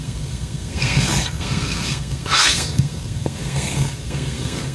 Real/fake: fake